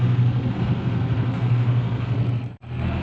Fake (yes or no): yes